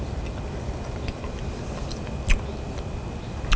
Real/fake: real